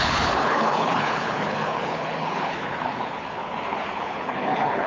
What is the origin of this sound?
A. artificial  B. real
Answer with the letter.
A